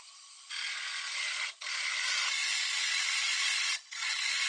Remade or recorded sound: remade